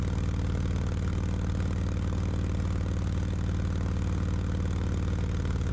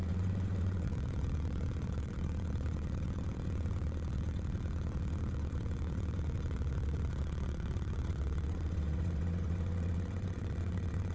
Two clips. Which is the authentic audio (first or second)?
first